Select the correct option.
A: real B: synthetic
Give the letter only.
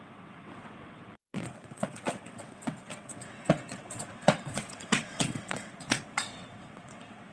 B